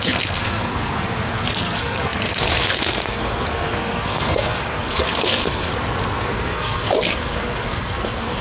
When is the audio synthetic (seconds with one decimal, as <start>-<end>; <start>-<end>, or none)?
0.0-5.7; 6.2-8.4